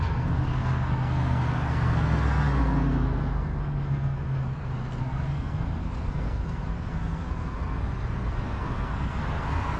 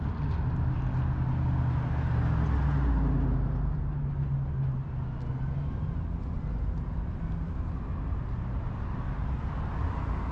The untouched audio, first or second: second